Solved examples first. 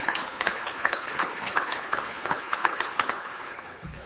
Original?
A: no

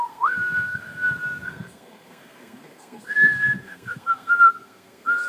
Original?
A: no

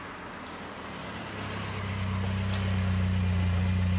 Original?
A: yes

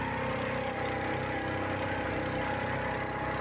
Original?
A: yes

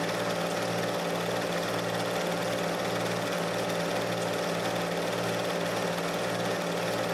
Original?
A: yes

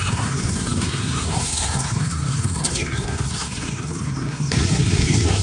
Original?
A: no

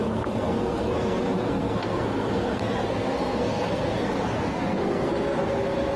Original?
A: no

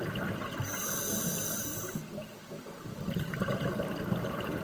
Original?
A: yes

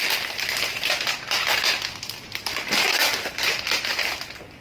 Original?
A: yes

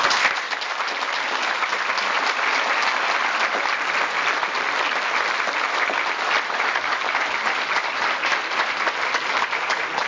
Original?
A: yes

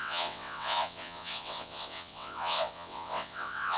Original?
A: no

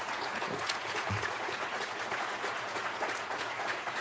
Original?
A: no